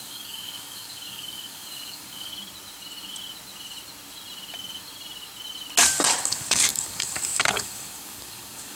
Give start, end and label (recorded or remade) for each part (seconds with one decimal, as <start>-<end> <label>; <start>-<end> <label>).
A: 0.0-2.3 remade; 2.3-6.2 recorded; 6.2-8.8 remade

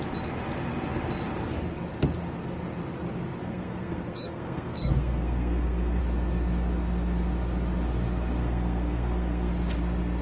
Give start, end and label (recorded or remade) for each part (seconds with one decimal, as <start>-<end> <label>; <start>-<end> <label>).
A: 0.0-3.4 recorded; 3.4-6.0 remade; 6.0-8.4 recorded; 8.4-9.5 remade; 9.5-10.2 recorded

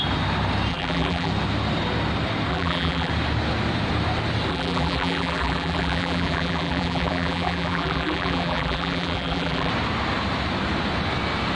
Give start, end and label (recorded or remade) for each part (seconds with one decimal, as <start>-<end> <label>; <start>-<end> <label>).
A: 0.0-0.7 recorded; 0.7-1.3 remade; 1.3-2.5 recorded; 2.5-3.1 remade; 3.1-4.5 recorded; 4.5-9.7 remade; 9.7-11.5 recorded

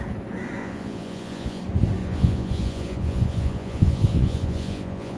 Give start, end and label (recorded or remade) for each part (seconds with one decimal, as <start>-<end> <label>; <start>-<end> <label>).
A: 0.0-0.6 recorded; 0.6-1.6 remade; 1.6-2.0 recorded; 2.0-5.2 remade